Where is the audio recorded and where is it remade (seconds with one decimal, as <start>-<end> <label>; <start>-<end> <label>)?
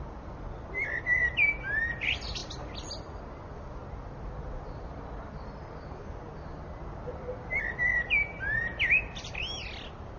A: 0.0-10.2 recorded